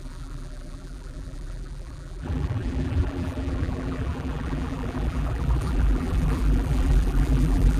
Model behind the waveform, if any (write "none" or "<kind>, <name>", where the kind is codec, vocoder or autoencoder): vocoder, BigVGAN v2